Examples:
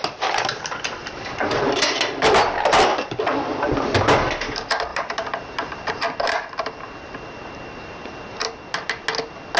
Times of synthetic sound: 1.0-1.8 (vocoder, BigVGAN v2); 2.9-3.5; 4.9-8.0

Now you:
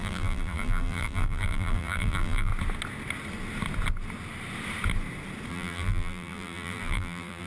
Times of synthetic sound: 0.0-2.5 (vocoder, BigVGAN v2); 5.5-7.5

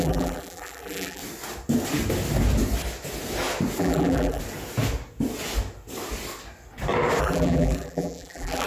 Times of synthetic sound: 0.0-1.2 (vocoder, BigVGAN v2); 3.8-4.4; 7.2-8.7

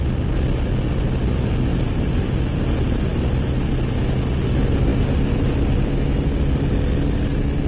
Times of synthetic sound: 1.7-2.3 (vocoder, BigVGAN v2)

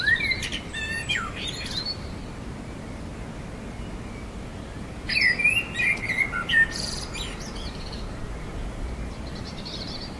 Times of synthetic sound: 0.0-2.2 (vocoder, BigVGAN v2); 6.5-10.2

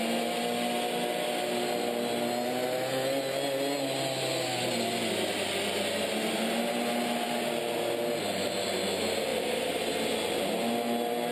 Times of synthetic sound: 9.3-9.8 (vocoder, BigVGAN v2)